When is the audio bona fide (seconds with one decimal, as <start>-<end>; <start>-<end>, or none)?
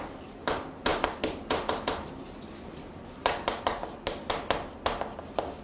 0.0-5.6